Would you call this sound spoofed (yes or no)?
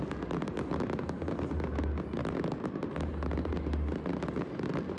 no